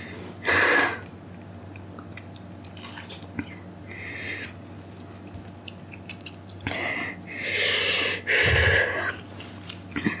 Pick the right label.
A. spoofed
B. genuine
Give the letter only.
B